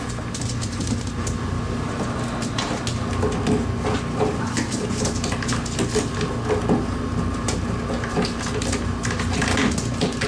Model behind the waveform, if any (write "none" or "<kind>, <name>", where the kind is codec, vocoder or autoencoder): none